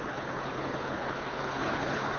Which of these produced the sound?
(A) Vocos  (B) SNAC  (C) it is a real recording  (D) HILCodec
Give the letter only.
D